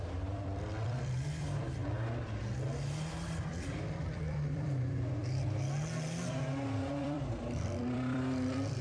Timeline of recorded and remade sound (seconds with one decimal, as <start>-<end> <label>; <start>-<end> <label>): 0.0-1.8 remade; 1.8-3.1 recorded; 3.1-5.2 remade; 5.2-7.0 recorded; 7.0-8.8 remade